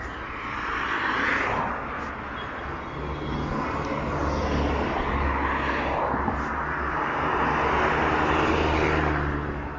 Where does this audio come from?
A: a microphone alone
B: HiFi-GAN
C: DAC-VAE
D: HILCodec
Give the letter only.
A